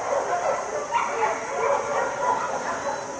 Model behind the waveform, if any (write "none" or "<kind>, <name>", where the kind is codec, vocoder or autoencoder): none